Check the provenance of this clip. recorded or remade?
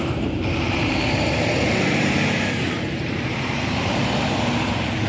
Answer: remade